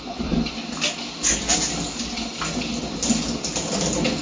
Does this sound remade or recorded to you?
recorded